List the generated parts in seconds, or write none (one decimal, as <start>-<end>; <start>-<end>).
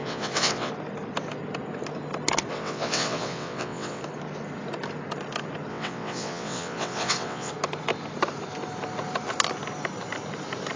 0.0-0.7; 2.5-4.0; 5.7-7.5